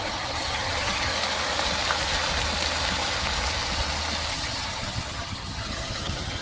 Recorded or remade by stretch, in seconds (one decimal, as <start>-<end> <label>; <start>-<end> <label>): 0.0-1.1 remade; 1.1-4.3 recorded; 4.3-6.4 remade